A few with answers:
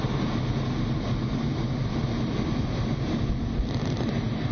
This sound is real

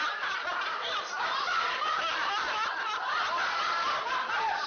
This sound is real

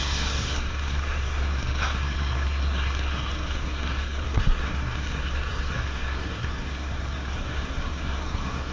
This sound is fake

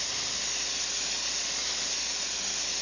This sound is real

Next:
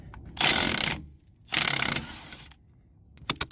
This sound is real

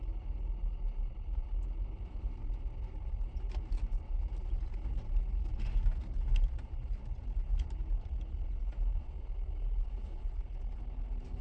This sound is real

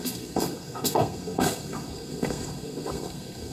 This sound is fake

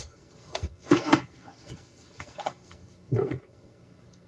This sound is fake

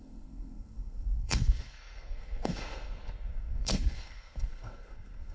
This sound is fake